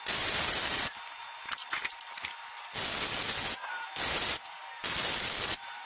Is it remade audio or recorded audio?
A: recorded